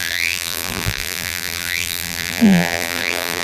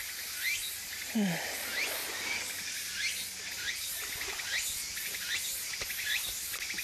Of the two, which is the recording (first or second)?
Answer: second